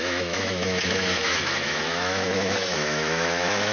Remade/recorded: remade